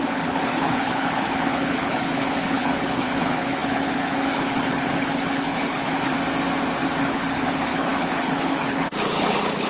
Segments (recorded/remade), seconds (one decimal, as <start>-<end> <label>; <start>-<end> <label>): 0.0-6.1 remade; 6.1-7.0 recorded; 7.0-9.7 remade